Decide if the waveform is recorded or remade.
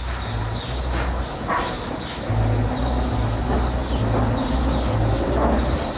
recorded